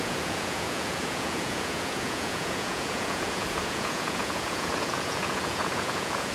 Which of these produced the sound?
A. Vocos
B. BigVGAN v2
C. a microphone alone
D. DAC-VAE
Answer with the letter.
A